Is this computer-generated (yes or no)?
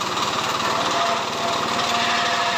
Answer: no